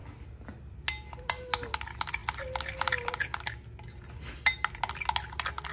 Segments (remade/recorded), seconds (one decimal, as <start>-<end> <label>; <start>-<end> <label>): 0.0-5.7 recorded

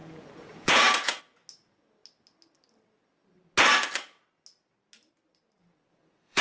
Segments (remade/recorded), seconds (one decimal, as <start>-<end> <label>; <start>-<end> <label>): 0.0-1.2 remade; 1.2-5.6 recorded; 5.6-6.4 remade

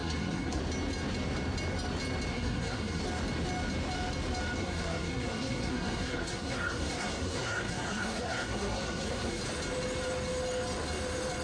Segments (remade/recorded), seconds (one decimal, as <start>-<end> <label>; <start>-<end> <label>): 0.0-0.6 remade; 0.6-2.3 recorded; 2.3-3.0 remade; 3.0-4.6 recorded; 4.6-9.4 remade; 9.4-11.4 recorded

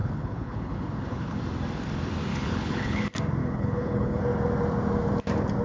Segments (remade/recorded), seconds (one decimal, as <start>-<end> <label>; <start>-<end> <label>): 0.0-1.4 remade; 1.4-2.3 recorded; 2.3-3.0 remade; 3.0-3.4 recorded; 3.4-4.2 remade; 4.2-5.6 recorded

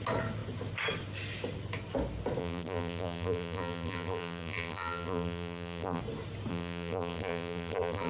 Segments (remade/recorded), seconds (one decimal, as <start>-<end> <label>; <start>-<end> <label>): 0.0-2.4 recorded; 2.4-6.0 remade; 6.0-6.5 recorded; 6.5-8.1 remade

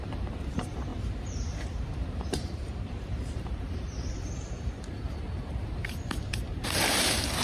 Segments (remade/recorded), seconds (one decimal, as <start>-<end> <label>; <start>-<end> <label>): 0.0-7.4 remade